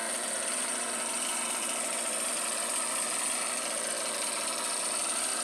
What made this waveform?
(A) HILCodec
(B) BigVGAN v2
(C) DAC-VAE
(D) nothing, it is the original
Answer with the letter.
D